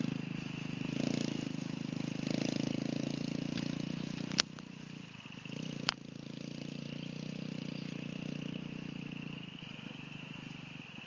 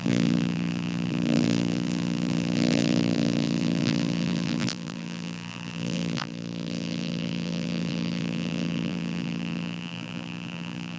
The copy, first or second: second